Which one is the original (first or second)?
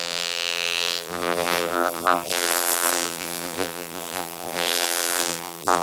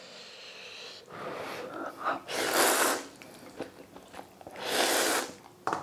second